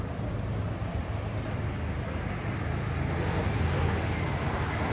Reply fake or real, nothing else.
real